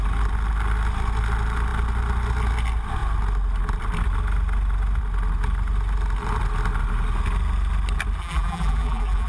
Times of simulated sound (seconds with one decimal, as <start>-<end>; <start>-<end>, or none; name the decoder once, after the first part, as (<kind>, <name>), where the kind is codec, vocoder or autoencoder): 8.2-9.3 (vocoder, BigVGAN v2)

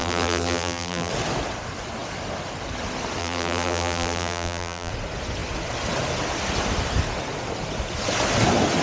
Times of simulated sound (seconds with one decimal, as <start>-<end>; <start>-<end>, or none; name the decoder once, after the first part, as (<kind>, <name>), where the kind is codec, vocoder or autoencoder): 0.0-1.1 (vocoder, BigVGAN v2); 3.2-4.9

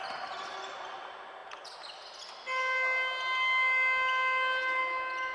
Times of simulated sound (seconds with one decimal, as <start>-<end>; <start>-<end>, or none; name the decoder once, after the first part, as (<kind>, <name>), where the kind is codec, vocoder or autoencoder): none

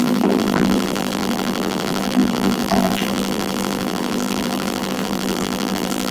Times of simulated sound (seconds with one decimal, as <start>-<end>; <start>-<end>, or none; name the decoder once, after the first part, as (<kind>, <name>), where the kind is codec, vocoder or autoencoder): 0.0-6.1 (vocoder, BigVGAN v2)